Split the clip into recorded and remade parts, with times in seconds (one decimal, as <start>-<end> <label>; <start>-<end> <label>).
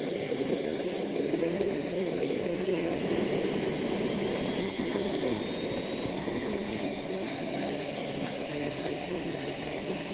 0.0-3.0 remade; 3.0-4.6 recorded; 4.6-5.4 remade; 5.4-6.1 recorded; 6.1-10.1 remade